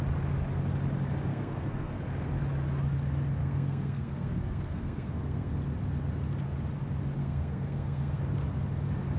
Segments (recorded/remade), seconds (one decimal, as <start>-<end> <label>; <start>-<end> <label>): 0.0-1.3 recorded; 1.3-1.9 remade; 1.9-3.4 recorded; 3.4-5.5 remade; 5.5-7.2 recorded; 7.2-8.2 remade; 8.2-9.2 recorded